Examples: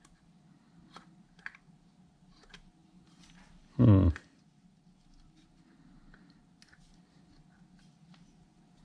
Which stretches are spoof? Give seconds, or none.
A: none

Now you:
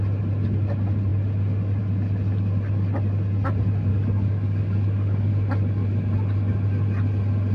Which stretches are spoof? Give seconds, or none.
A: 3.9-5.3 (codec, DAC)

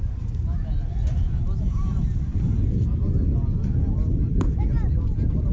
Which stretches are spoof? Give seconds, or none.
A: none